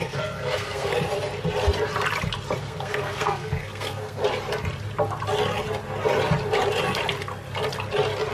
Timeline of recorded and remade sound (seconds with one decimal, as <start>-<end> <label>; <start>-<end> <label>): 0.0-0.9 remade; 0.9-2.6 recorded; 2.6-4.2 remade; 4.2-8.3 recorded